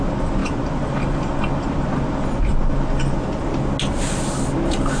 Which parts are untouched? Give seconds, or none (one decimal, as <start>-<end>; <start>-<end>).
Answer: 0.0-5.0